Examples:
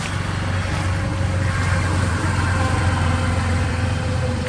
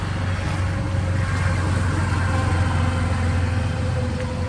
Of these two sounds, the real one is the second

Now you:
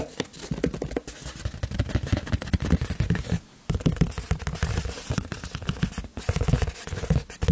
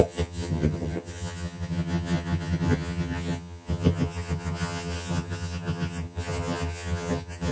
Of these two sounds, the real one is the first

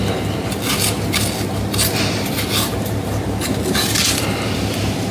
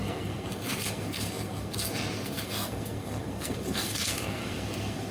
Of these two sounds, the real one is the first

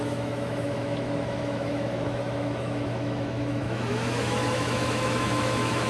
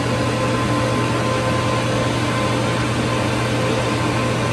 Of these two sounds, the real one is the second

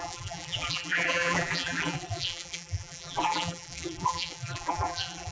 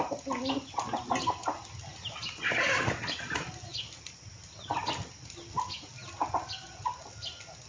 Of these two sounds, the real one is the second